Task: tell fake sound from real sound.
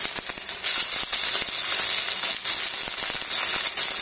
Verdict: real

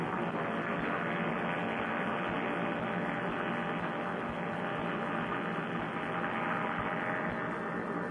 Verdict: real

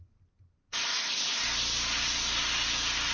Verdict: real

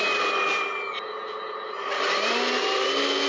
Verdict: real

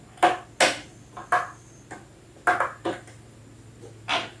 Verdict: real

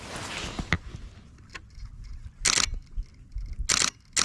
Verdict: real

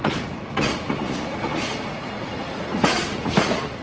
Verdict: fake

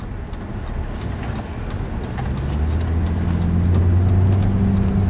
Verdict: real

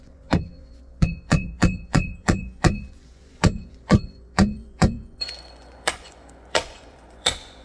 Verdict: fake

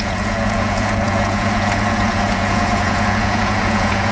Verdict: fake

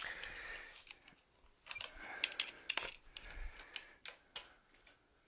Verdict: real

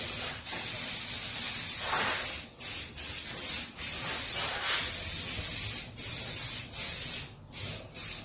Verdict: real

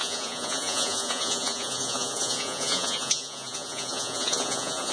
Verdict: fake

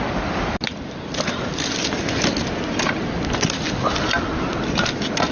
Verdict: real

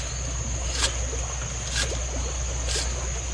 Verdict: real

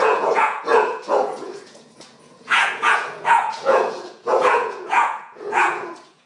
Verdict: fake